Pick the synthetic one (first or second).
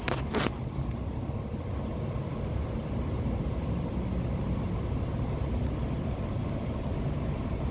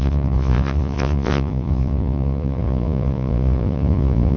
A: second